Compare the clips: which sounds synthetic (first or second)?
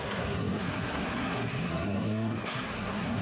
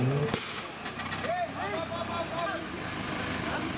first